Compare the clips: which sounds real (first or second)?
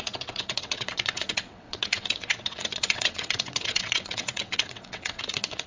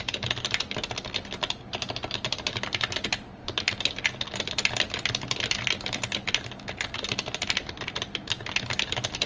second